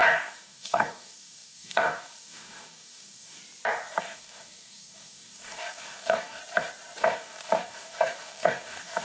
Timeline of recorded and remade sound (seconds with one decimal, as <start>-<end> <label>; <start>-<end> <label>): 0.0-3.4 remade; 3.4-4.0 recorded; 4.0-6.4 remade; 6.4-7.0 recorded; 7.0-9.0 remade